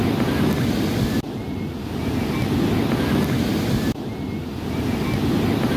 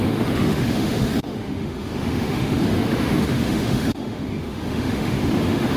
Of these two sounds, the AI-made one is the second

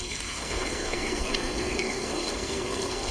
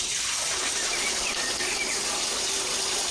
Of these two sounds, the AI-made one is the first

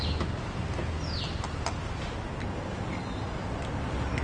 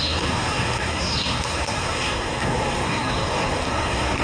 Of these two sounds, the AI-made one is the second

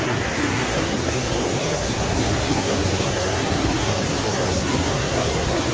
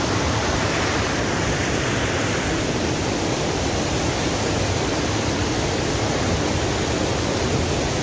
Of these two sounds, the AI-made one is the first